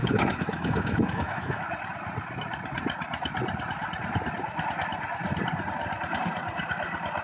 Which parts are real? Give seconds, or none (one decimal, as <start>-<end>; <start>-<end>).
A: 1.6-7.2